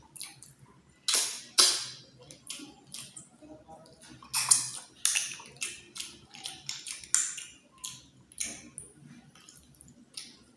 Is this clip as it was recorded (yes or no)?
yes